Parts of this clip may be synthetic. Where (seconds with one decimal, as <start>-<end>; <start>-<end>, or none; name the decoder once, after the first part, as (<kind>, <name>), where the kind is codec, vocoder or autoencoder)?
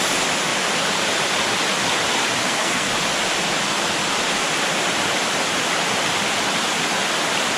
2.4-2.9 (codec, SNAC)